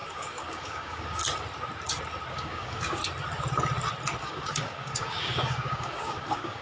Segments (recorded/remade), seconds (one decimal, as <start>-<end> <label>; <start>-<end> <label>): 0.0-1.2 remade; 1.2-2.3 recorded; 2.3-3.0 remade; 3.0-4.2 recorded; 4.2-6.6 remade